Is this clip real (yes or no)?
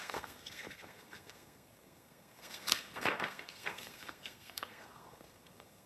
no